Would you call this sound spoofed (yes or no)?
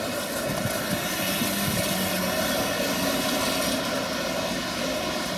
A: no